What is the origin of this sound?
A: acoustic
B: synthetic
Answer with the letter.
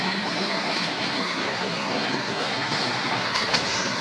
B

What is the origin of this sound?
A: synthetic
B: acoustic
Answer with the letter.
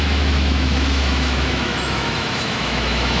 A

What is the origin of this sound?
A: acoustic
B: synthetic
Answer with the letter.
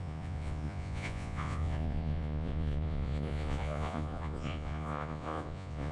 B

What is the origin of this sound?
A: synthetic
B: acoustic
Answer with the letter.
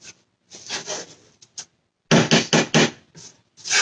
B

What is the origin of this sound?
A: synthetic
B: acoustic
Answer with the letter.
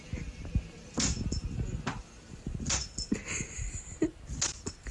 B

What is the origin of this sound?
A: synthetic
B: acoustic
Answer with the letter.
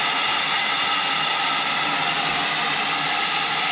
B